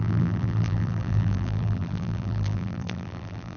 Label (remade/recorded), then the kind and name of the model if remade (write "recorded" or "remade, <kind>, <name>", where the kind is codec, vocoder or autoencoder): remade, vocoder, BigVGAN v2